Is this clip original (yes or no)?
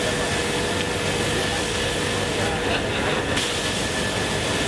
yes